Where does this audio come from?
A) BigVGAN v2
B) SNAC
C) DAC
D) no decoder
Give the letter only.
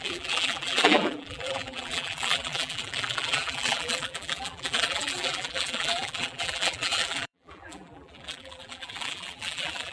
A